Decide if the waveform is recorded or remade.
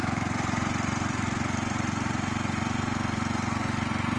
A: recorded